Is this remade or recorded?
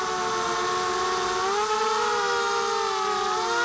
recorded